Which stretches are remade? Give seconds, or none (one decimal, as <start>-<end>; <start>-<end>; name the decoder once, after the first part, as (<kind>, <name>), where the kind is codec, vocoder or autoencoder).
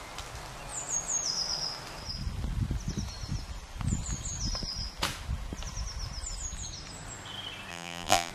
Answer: 7.7-8.3 (vocoder, BigVGAN v2)